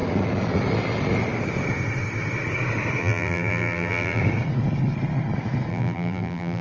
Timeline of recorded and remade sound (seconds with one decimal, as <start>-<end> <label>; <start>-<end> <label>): 0.0-3.0 recorded; 3.0-4.2 remade; 4.2-5.7 recorded; 5.7-6.6 remade